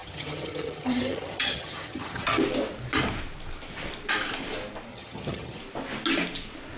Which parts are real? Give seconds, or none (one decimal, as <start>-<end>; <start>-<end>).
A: 2.4-4.9; 5.6-6.8

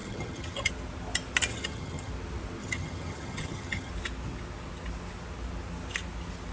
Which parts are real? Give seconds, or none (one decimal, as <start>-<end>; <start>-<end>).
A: 0.7-1.5; 2.1-2.6; 3.9-6.5

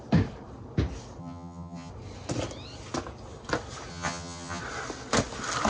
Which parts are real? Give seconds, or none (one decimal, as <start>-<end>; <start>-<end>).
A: 0.0-1.2; 1.9-3.9; 4.6-5.7

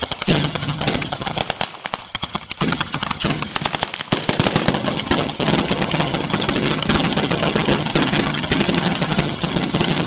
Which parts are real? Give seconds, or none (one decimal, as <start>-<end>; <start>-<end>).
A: 1.4-2.0; 3.5-4.7

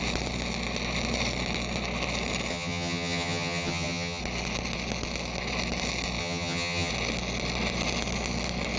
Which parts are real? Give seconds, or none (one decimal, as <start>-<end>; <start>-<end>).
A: 0.0-2.5; 4.2-6.2; 6.9-8.8

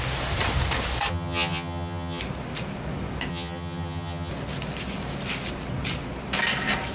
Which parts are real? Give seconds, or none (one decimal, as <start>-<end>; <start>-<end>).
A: 0.0-1.1; 2.2-3.3; 4.3-6.9

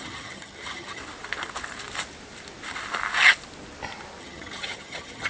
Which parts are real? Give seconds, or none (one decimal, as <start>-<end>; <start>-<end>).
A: 1.0-4.2